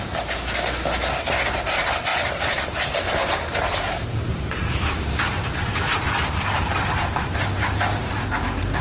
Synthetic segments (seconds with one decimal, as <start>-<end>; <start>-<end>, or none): 2.1-4.6